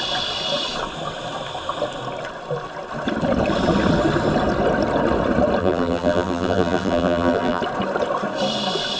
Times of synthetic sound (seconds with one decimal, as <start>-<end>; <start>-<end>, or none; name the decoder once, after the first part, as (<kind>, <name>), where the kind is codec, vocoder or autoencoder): 5.6-7.6 (vocoder, BigVGAN v2)